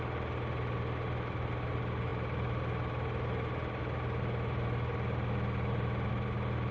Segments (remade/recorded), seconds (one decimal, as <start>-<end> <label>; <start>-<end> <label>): 0.0-6.7 recorded

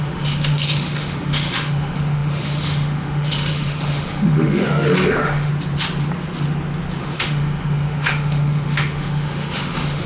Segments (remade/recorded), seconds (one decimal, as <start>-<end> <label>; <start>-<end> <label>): 0.0-5.5 remade; 5.5-7.0 recorded; 7.0-10.1 remade

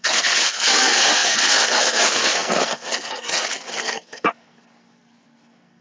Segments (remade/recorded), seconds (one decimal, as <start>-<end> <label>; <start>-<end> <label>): 0.0-5.8 remade

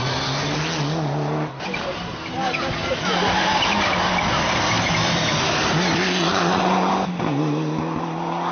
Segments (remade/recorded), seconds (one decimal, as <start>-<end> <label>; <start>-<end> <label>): 0.0-6.3 recorded; 6.3-6.9 remade; 6.9-8.5 recorded

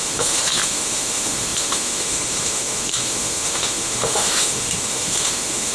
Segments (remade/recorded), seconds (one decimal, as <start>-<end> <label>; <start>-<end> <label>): 0.0-5.7 remade

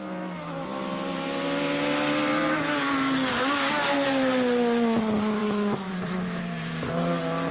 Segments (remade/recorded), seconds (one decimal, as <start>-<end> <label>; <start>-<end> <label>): 0.0-5.4 recorded; 5.4-6.9 remade; 6.9-7.5 recorded

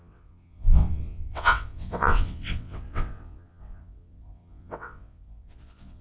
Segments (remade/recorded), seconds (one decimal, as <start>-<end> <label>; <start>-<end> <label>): 0.0-6.0 remade